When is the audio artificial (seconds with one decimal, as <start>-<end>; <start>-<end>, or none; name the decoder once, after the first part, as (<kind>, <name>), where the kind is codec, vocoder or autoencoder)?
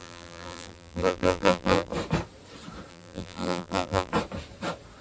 0.0-1.9 (vocoder, BigVGAN v2); 2.9-4.1